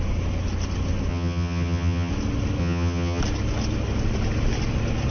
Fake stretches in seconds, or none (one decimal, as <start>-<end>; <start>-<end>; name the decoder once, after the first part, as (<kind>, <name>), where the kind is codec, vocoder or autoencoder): 1.1-2.1 (vocoder, HiFi-GAN); 2.6-3.2